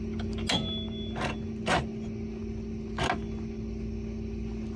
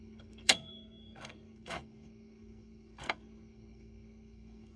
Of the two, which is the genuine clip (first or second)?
first